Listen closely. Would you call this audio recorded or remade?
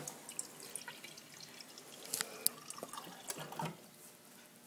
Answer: recorded